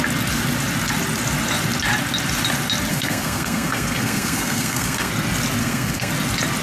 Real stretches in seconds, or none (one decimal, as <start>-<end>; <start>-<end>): 0.0-2.9; 5.1-5.6; 6.1-6.6